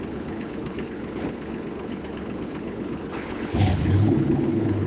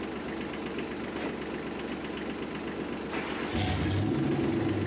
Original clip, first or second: second